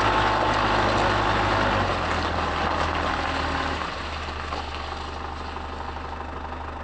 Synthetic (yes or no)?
no